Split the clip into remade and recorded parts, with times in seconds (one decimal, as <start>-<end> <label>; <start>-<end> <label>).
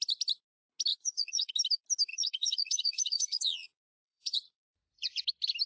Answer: 0.0-0.9 recorded; 0.9-1.5 remade; 1.5-2.1 recorded; 2.1-5.2 remade; 5.2-5.7 recorded